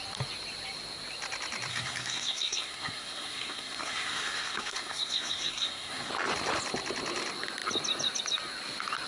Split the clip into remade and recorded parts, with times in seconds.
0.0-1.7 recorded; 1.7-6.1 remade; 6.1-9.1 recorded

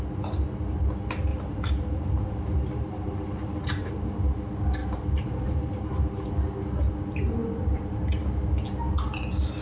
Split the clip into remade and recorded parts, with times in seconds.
0.0-1.3 recorded; 1.3-4.1 remade; 4.1-4.8 recorded; 4.8-6.3 remade; 6.3-9.6 recorded

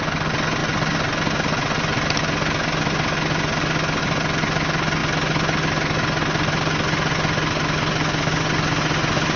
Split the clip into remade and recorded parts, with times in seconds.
0.0-9.4 recorded

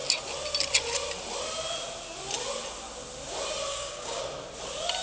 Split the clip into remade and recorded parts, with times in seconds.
0.0-3.7 recorded; 3.7-4.2 remade; 4.2-5.0 recorded